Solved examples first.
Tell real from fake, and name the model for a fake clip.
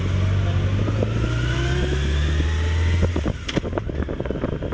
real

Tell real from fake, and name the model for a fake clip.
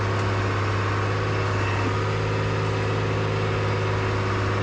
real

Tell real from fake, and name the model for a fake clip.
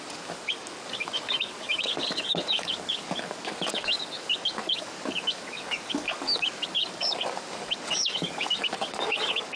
fake, codec, DAC